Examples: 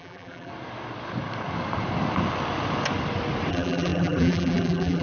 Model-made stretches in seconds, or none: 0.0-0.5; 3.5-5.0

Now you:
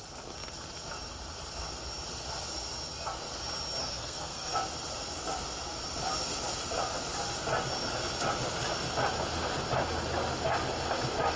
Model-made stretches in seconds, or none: 3.8-4.5

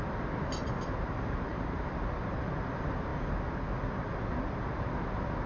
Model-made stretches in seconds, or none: 1.5-2.1

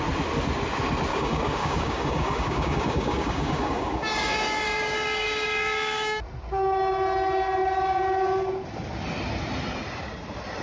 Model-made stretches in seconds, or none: 1.1-6.2

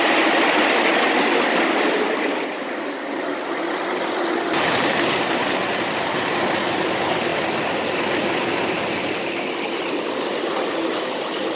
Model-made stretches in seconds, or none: 7.3-8.0

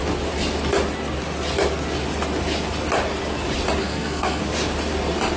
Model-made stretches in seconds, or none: 3.8-4.4

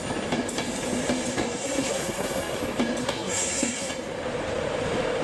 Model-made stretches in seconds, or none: 1.3-2.6; 3.0-3.9

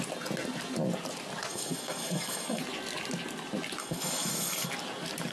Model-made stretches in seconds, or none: 1.5-2.6; 3.8-4.7